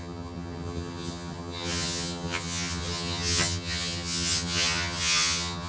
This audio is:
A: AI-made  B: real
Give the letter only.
A